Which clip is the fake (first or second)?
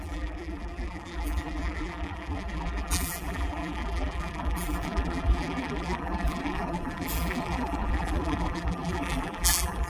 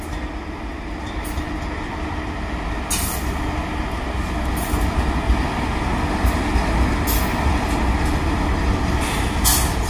first